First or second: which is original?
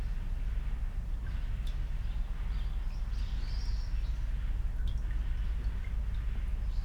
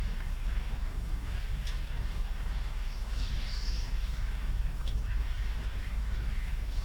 first